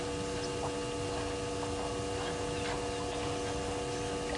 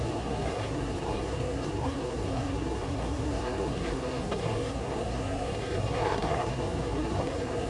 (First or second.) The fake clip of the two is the second